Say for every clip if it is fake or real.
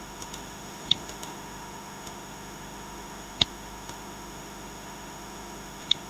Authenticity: fake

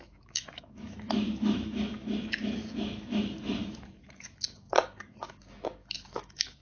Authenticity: fake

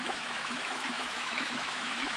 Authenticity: fake